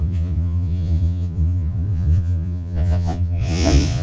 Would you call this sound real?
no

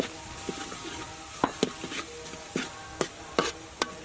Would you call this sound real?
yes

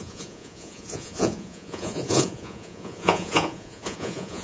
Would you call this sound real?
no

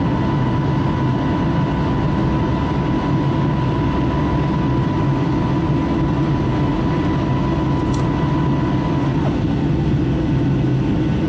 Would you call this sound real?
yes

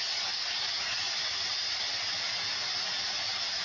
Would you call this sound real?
yes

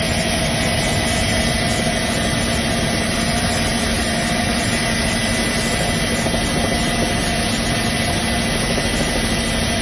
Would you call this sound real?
yes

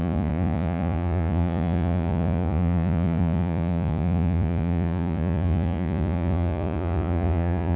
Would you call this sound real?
no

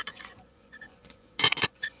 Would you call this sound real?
no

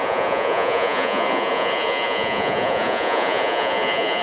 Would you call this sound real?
no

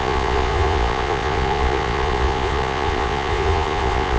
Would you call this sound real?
no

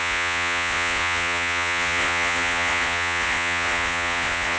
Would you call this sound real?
no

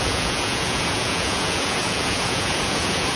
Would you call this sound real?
no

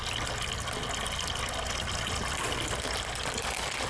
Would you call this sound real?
yes